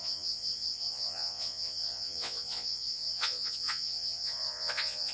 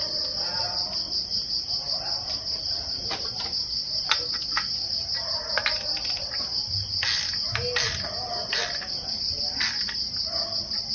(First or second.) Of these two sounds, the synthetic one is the first